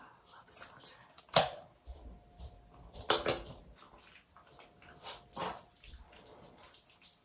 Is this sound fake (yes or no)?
no